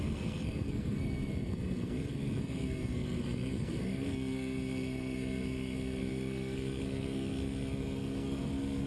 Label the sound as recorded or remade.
remade